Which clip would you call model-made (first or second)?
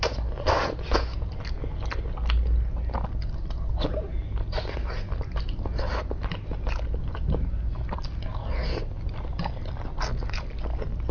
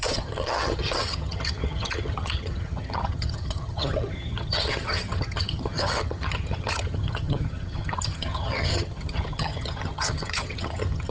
second